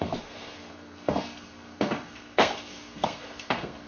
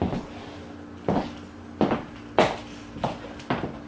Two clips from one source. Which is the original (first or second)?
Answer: second